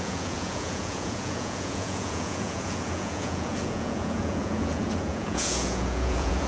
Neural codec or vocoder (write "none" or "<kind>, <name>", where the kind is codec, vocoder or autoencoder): vocoder, Vocos